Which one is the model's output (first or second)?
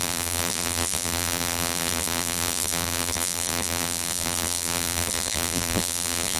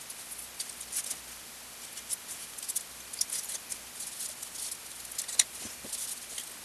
first